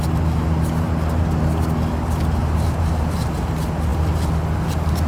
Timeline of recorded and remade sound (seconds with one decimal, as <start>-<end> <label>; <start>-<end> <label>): 0.0-2.4 recorded; 2.4-3.3 remade; 3.3-5.1 recorded